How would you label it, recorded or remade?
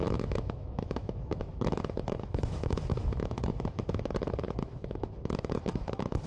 remade